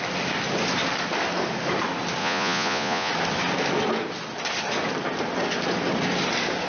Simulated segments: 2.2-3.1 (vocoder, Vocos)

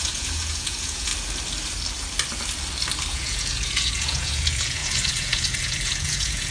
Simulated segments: 0.0-1.1 (vocoder, Vocos); 3.1-6.5